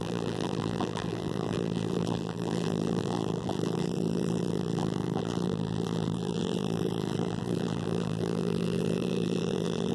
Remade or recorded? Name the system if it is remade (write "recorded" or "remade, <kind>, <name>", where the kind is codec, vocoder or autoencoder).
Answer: remade, vocoder, BigVGAN v2